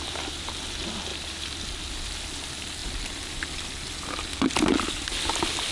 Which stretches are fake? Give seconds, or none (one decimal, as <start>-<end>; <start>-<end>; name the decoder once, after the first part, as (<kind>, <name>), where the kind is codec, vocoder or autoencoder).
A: 1.1-1.6 (vocoder, BigVGAN v2); 2.8-3.7